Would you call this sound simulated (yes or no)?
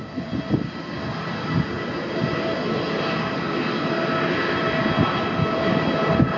no